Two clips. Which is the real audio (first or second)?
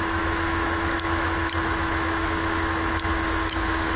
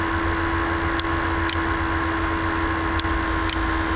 second